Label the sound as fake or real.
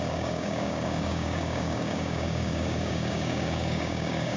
fake